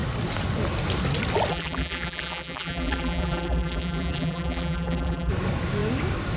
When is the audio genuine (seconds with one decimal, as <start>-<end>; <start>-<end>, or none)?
0.0-1.5; 5.3-6.4